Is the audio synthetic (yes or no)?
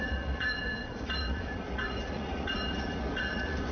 yes